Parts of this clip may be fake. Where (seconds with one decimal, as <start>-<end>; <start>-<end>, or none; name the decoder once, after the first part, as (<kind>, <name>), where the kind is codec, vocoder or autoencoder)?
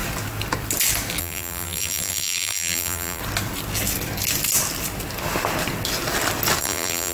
1.2-3.2 (vocoder, BigVGAN v2); 6.6-7.1